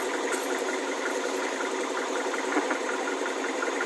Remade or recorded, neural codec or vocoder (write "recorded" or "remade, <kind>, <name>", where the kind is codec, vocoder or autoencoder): recorded